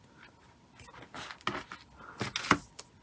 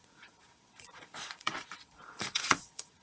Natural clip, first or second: first